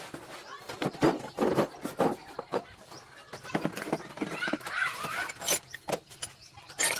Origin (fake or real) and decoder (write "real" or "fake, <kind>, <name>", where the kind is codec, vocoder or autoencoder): real